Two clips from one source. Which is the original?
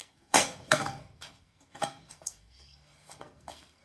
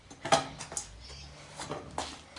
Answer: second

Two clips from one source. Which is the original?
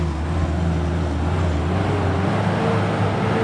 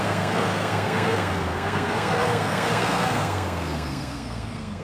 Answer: first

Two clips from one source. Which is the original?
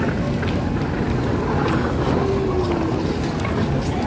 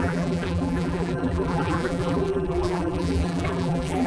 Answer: first